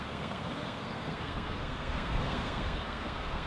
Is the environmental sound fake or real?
fake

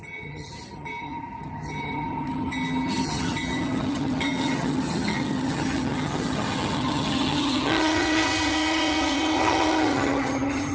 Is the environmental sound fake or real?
fake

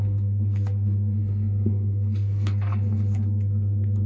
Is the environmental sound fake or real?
fake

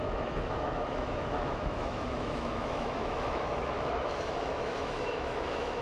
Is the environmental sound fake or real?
fake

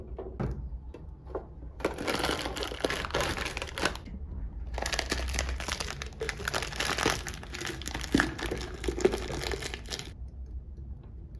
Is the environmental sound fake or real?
real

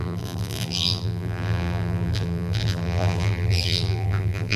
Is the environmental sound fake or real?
fake